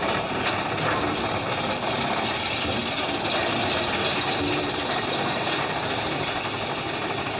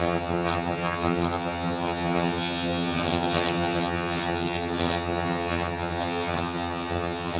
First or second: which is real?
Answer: first